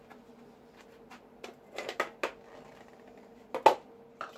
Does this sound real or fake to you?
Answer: real